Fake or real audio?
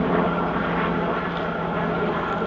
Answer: real